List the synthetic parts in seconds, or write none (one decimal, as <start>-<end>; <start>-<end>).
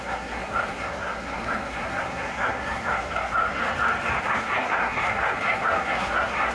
0.0-3.6; 4.2-6.5